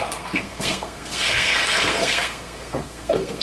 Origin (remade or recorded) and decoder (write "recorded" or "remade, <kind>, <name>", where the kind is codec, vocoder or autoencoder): remade, codec, SNAC